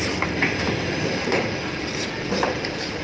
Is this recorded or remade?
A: remade